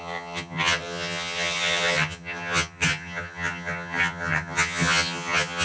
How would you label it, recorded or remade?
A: remade